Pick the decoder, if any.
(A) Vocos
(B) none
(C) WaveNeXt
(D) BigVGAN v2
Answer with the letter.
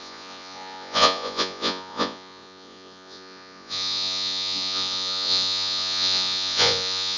A